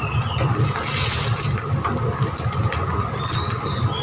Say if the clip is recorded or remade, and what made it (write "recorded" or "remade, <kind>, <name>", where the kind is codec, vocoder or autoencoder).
recorded